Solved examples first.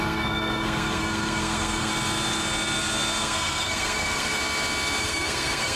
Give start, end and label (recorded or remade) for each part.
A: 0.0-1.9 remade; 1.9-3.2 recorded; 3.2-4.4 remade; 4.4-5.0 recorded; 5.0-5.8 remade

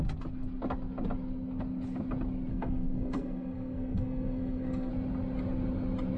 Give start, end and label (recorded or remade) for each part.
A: 0.0-2.5 recorded; 2.5-4.9 remade; 4.9-6.2 recorded